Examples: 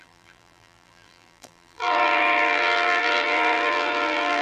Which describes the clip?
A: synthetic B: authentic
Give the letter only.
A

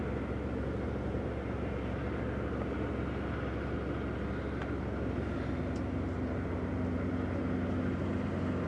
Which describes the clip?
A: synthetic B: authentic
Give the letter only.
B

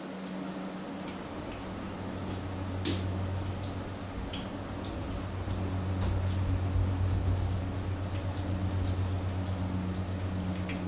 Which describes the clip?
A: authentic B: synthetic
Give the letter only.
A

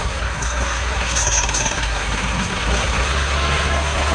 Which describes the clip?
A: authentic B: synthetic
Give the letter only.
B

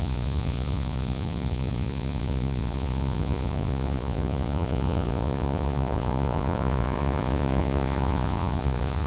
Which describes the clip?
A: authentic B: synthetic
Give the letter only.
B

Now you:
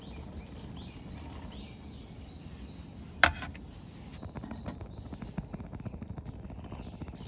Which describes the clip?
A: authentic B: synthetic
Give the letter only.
A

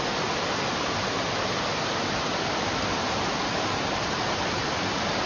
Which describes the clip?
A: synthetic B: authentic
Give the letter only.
B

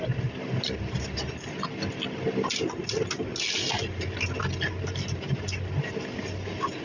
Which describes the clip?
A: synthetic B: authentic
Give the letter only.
B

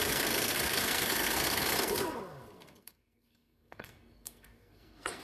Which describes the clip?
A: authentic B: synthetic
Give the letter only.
B